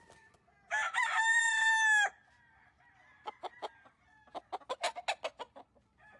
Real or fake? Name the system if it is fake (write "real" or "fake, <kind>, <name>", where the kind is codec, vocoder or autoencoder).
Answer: real